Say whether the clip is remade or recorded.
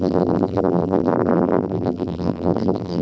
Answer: remade